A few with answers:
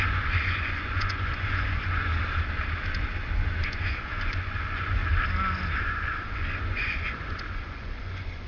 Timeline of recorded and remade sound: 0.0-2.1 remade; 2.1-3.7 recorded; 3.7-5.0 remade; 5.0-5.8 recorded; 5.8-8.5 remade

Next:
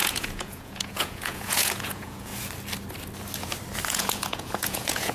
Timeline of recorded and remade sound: 0.0-2.3 remade; 2.3-3.9 recorded; 3.9-5.1 remade

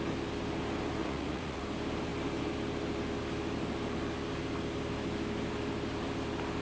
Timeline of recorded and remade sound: 0.0-1.0 recorded; 1.0-1.6 remade; 1.6-6.6 recorded

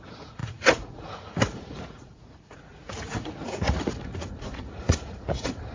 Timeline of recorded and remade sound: 0.0-5.7 remade

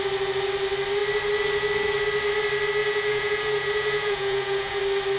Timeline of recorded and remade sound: 0.0-2.8 recorded; 2.8-4.8 remade; 4.8-5.2 recorded